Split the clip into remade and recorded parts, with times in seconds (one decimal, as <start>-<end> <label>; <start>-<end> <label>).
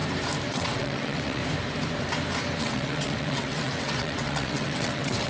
0.0-0.5 recorded; 0.5-1.4 remade; 1.4-2.6 recorded; 2.6-5.3 remade